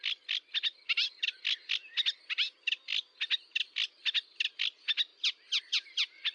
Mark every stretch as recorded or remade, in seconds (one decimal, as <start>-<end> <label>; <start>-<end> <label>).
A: 0.0-6.3 recorded